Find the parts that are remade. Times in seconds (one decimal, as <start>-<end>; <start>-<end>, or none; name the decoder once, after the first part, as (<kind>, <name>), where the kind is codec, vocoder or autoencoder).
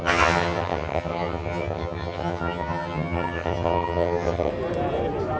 0.0-4.5 (vocoder, HiFi-GAN)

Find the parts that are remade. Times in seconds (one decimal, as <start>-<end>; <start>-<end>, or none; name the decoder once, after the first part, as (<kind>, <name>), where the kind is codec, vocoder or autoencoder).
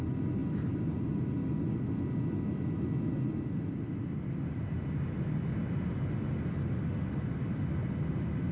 none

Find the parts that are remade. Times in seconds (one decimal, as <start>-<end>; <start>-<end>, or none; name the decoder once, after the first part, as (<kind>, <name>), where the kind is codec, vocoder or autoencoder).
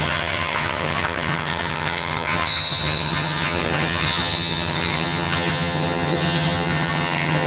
0.0-7.5 (vocoder, HiFi-GAN)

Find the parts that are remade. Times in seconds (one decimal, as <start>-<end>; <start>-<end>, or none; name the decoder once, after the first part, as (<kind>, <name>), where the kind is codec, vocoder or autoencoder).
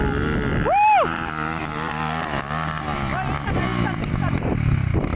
none